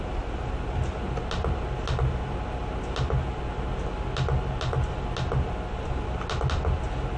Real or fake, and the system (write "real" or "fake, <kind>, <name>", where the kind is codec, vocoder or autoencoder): real